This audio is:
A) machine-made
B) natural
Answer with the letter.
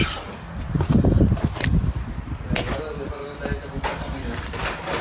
B